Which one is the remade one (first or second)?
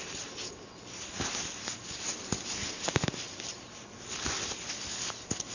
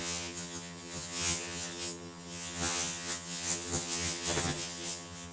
second